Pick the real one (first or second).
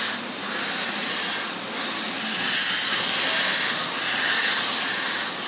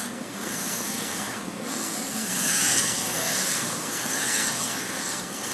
first